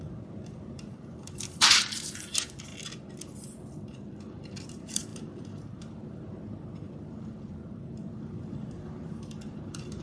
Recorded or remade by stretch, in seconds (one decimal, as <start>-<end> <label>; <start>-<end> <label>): 0.0-2.7 remade; 2.7-4.2 recorded; 4.2-10.0 remade